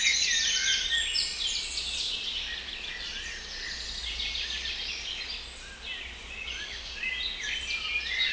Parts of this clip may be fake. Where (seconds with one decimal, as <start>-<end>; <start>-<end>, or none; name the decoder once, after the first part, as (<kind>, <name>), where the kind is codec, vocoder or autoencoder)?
6.2-7.0 (vocoder, Vocos)